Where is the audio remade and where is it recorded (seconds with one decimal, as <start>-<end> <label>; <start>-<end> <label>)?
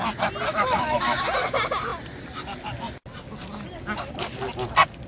0.0-0.5 recorded; 0.5-1.2 remade; 1.2-5.1 recorded